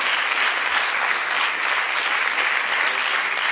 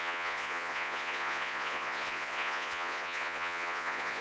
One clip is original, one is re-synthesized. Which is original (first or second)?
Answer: first